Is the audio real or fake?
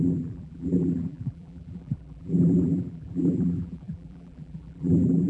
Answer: fake